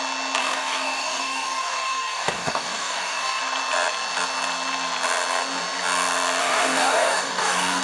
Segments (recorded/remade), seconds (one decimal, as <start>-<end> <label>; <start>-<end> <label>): 0.0-0.4 recorded; 0.4-3.4 remade; 3.4-6.4 recorded; 6.4-7.8 remade